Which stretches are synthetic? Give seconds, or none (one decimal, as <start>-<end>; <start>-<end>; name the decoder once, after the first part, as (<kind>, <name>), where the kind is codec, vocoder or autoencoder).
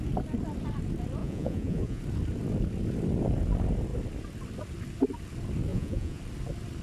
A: 1.2-2.0 (vocoder, Vocos); 5.7-6.2